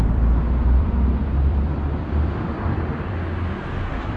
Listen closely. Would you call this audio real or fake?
fake